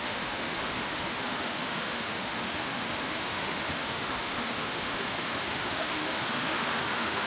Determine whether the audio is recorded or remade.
remade